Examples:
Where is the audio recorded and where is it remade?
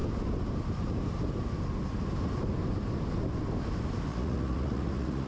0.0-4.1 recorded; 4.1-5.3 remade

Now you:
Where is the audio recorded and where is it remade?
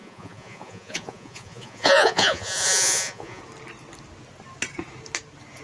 0.0-3.4 remade; 3.4-5.6 recorded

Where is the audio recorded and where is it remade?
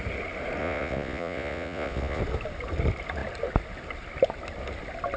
0.0-0.6 recorded; 0.6-2.2 remade; 2.2-5.2 recorded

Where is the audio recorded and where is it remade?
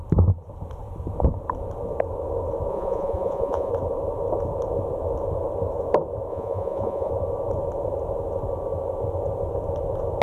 0.0-2.7 recorded; 2.7-3.7 remade; 3.7-6.3 recorded; 6.3-7.1 remade; 7.1-10.2 recorded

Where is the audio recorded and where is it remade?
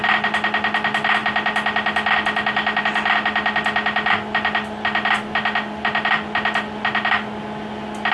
0.0-8.1 recorded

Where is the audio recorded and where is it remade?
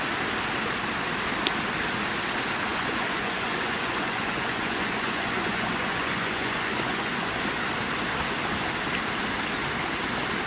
0.0-2.7 recorded; 2.7-7.3 remade; 7.3-10.5 recorded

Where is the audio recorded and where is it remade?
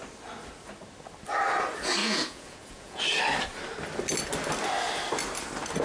0.0-2.0 recorded; 2.0-3.0 remade; 3.0-5.8 recorded